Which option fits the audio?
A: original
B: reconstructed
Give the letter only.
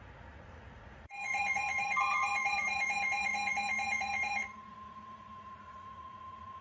B